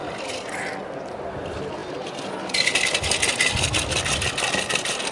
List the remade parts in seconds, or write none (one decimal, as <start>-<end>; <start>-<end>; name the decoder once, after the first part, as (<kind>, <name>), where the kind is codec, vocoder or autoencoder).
none